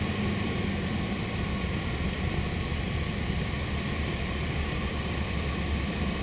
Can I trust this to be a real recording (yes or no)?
no